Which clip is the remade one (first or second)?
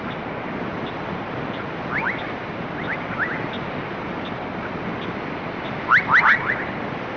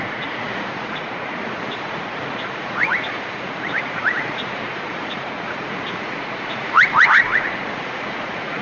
second